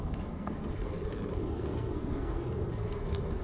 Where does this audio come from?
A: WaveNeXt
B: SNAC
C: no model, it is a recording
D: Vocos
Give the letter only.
B